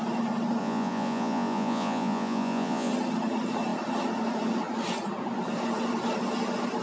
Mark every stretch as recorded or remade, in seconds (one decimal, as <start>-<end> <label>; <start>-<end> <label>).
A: 0.0-0.6 recorded; 0.6-2.9 remade; 2.9-6.8 recorded